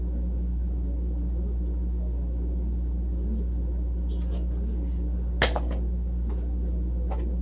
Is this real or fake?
real